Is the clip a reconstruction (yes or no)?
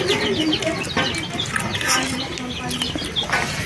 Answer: no